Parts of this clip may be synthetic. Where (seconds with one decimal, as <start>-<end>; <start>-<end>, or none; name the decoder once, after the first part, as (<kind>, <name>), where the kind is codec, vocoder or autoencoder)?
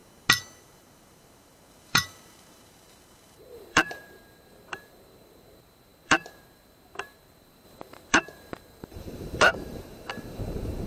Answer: 0.6-10.9 (vocoder, BigVGAN v2)